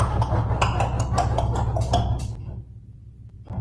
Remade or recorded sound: recorded